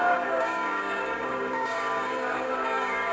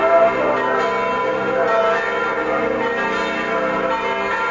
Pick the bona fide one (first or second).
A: second